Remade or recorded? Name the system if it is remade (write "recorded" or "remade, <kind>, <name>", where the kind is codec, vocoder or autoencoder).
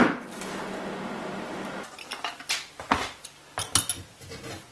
recorded